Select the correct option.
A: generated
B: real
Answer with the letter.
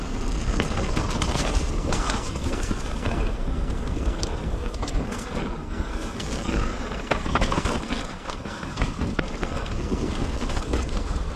A